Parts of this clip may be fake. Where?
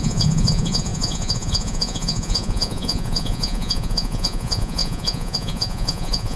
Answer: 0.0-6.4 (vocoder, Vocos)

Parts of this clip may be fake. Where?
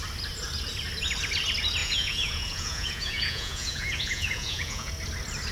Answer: 1.8-4.9 (vocoder, Vocos)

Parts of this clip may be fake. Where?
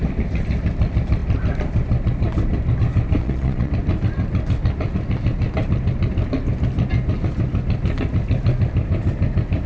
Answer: 3.2-3.7 (vocoder, Vocos)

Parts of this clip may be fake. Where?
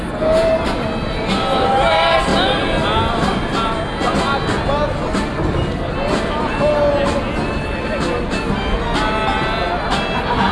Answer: none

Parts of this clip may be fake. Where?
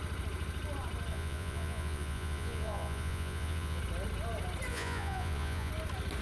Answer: 1.1-3.8 (vocoder, Vocos); 4.7-5.7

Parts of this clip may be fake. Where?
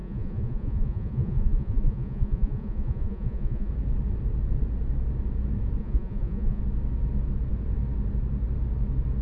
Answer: 0.0-3.7 (vocoder, Vocos); 5.8-6.6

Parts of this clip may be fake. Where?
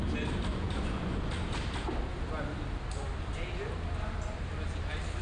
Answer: 0.5-1.2 (vocoder, Vocos)